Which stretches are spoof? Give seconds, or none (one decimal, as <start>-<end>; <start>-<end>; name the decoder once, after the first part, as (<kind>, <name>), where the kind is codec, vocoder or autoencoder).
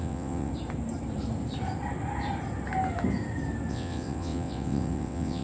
0.0-0.5 (vocoder, WaveNeXt); 3.7-5.4